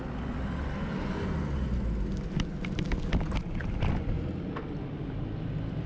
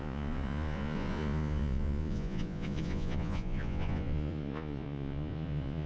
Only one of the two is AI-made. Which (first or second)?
second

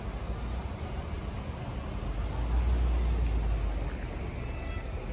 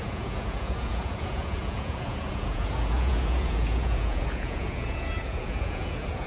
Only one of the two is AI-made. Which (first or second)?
second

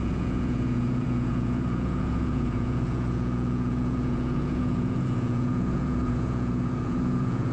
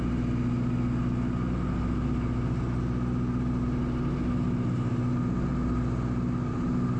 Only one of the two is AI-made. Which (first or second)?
first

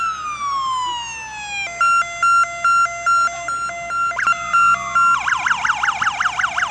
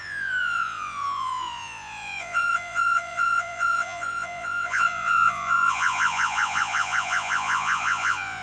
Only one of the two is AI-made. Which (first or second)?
second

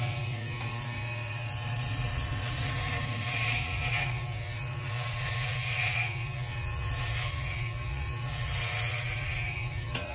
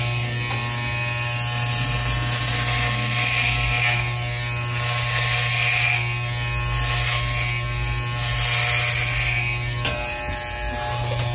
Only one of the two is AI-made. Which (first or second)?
first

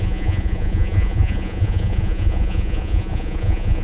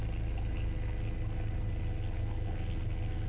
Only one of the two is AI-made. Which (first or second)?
first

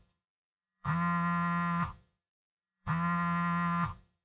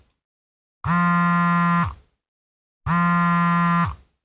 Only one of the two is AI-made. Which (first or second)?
first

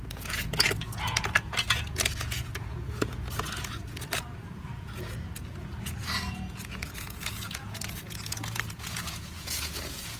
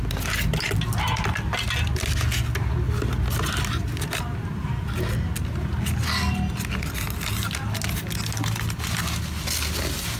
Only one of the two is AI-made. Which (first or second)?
first